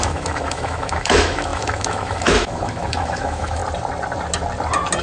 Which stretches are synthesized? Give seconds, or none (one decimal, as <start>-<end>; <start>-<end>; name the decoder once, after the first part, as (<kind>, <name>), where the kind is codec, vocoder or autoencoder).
0.0-3.6 (autoencoder, DAC-VAE)